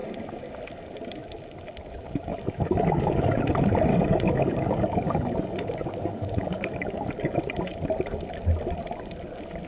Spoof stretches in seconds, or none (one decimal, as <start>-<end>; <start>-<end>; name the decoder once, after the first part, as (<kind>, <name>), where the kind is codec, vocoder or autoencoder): 2.3-3.4 (codec, DAC); 3.9-7.4